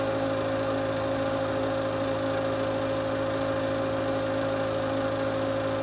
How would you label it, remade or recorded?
recorded